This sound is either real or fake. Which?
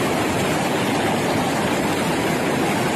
real